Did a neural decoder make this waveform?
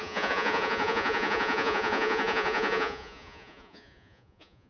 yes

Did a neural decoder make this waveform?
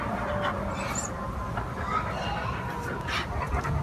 no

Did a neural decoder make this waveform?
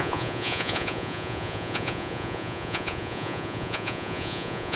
yes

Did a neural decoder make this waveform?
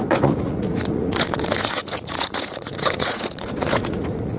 yes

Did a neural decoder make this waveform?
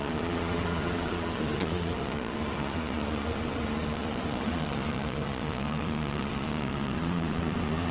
yes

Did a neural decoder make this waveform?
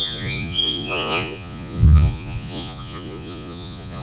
yes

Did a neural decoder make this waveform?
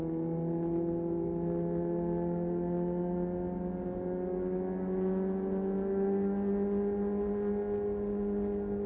no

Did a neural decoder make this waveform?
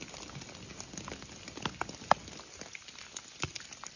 no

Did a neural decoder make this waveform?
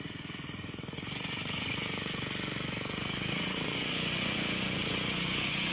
yes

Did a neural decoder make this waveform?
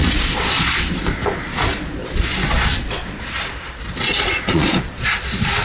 yes